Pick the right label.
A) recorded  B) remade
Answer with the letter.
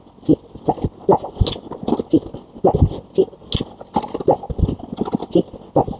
A